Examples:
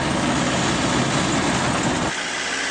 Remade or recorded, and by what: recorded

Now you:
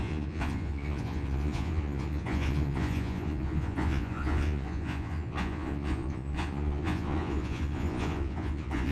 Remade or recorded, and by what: remade, vocoder, Vocos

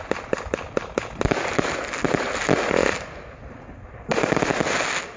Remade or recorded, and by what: recorded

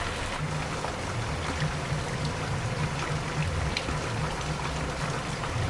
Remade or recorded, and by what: recorded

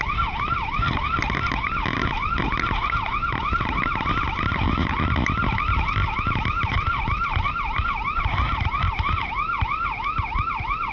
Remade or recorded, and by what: recorded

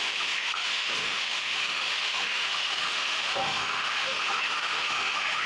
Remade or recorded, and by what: remade, autoencoder, DAC-VAE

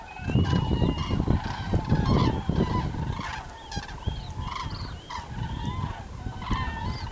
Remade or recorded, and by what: recorded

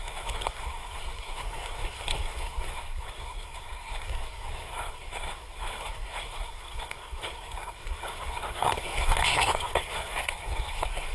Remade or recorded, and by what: remade, codec, SNAC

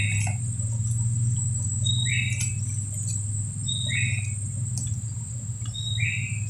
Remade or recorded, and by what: recorded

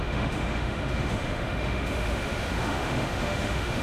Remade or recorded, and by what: remade, autoencoder, DAC-VAE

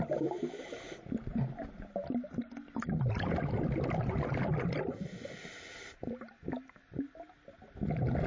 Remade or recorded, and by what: recorded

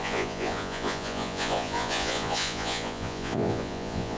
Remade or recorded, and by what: remade, vocoder, Vocos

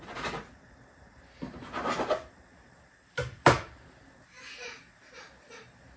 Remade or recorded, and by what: recorded